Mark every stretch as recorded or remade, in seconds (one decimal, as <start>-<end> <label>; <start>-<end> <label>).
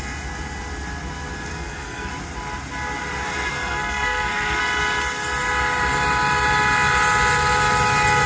0.0-1.5 recorded; 1.5-2.1 remade; 2.1-3.5 recorded; 3.5-4.6 remade; 4.6-8.3 recorded